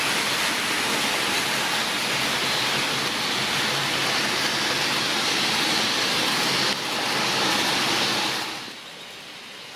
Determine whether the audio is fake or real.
real